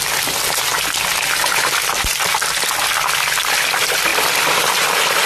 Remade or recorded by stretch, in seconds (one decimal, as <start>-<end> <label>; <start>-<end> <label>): 0.0-5.3 recorded